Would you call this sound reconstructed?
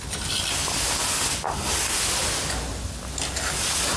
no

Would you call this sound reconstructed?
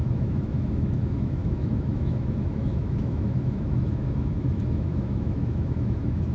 yes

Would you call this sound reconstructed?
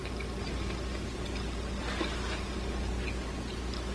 no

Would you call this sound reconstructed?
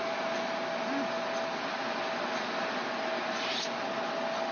no